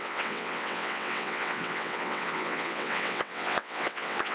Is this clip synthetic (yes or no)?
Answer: yes